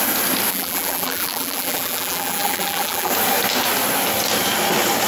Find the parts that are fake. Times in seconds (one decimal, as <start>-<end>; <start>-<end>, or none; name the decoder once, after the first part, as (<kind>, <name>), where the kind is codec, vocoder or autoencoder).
0.5-3.1 (vocoder, BigVGAN v2)